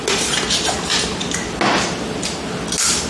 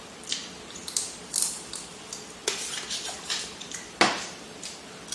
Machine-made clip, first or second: second